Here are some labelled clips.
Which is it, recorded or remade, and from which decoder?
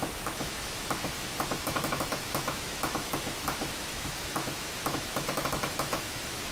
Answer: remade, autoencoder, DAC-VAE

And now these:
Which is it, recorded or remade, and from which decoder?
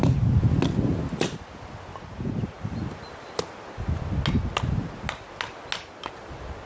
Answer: recorded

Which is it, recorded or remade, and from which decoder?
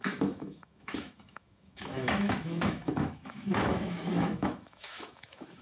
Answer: remade, autoencoder, DAC-VAE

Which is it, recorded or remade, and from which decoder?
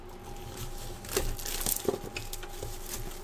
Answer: recorded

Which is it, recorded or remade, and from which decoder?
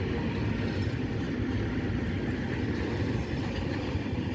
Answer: recorded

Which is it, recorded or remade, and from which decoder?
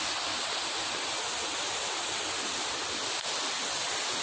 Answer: recorded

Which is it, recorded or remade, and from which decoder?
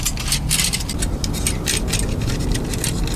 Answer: recorded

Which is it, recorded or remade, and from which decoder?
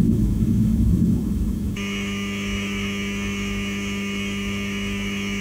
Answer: remade, autoencoder, DAC-VAE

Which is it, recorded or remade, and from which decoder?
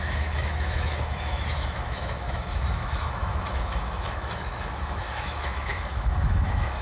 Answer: remade, autoencoder, DAC-VAE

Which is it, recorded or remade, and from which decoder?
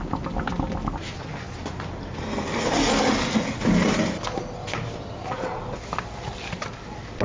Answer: recorded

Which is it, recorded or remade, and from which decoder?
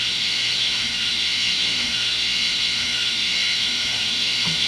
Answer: remade, autoencoder, DAC-VAE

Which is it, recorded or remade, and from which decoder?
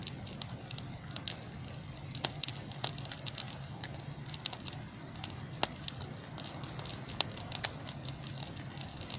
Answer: recorded